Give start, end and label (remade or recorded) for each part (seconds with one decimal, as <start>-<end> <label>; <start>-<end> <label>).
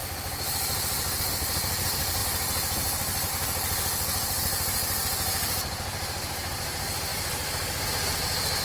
0.0-8.6 recorded